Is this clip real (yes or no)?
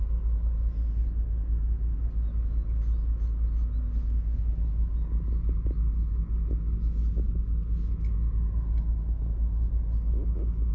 yes